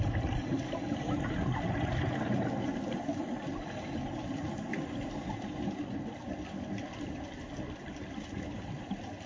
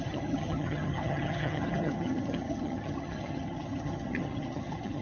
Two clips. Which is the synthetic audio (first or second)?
second